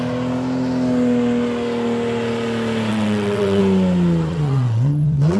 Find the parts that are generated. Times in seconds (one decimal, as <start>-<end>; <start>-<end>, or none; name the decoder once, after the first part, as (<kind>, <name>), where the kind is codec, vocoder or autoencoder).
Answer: 2.9-3.6 (vocoder, WaveNeXt); 4.3-5.4

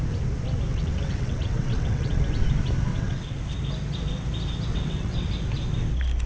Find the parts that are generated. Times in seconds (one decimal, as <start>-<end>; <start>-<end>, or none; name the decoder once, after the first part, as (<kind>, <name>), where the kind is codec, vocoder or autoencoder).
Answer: 0.7-2.2 (vocoder, WaveNeXt); 2.9-3.4; 4.7-5.3

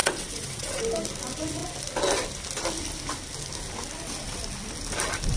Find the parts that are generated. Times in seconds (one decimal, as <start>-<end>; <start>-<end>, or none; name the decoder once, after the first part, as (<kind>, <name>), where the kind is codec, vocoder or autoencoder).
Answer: 0.0-0.8 (vocoder, WaveNeXt)